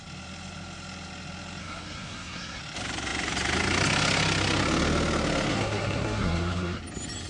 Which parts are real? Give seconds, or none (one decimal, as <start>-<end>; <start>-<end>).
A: 0.0-1.6; 2.6-5.5; 6.8-7.3

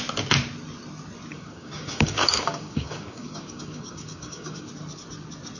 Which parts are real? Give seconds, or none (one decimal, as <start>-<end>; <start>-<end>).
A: 0.0-1.3; 4.7-5.6

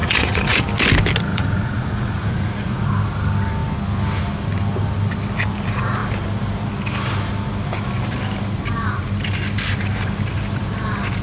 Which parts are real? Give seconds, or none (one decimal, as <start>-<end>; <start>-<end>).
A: 0.6-1.3; 2.9-11.2